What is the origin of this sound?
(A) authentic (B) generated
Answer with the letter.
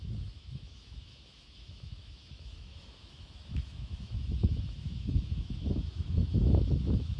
B